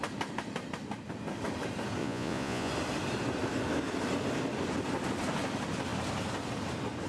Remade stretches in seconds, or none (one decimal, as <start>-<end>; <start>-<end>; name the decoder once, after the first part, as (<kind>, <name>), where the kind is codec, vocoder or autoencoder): 2.0-2.7 (vocoder, Vocos)